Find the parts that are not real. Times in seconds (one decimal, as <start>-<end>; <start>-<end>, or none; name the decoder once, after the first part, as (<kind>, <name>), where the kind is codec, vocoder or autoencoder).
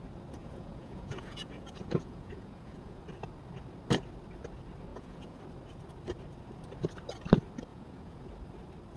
0.4-3.0 (vocoder, Vocos); 4.9-5.4; 7.7-8.3